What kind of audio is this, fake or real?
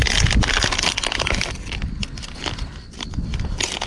real